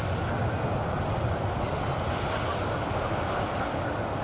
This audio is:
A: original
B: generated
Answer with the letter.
A